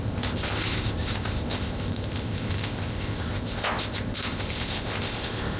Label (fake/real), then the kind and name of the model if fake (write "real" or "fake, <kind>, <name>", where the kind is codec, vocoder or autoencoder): fake, codec, ZipCodec